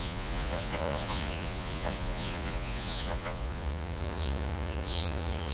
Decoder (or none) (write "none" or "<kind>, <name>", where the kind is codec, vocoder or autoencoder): vocoder, Vocos